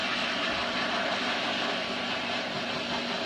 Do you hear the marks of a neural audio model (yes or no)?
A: no